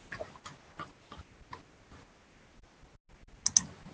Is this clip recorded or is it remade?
recorded